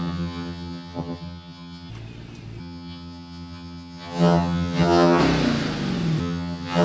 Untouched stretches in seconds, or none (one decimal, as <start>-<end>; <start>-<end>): 1.9-2.6; 5.2-6.2